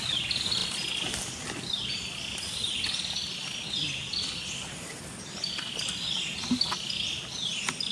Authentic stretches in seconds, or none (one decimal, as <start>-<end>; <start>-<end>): 0.0-7.9